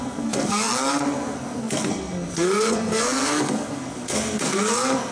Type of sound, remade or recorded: remade